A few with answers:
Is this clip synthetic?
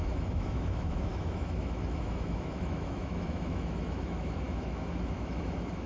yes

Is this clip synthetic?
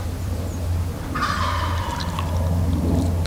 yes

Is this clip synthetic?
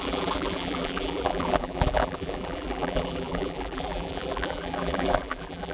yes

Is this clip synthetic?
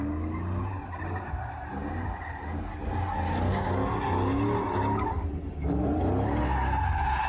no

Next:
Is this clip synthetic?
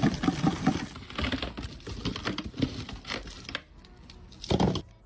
no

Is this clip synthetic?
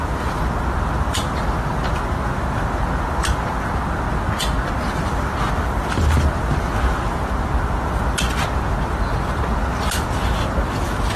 no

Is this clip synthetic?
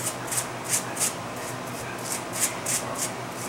no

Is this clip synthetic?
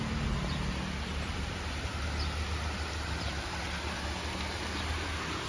no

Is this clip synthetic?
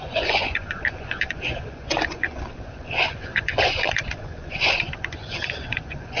yes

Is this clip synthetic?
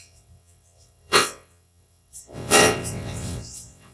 yes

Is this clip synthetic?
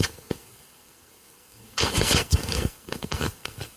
yes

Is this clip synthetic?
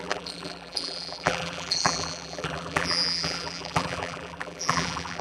yes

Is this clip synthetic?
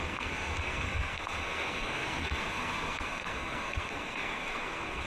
yes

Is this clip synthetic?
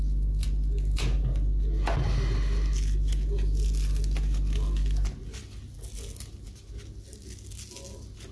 no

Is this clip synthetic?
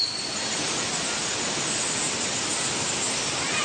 no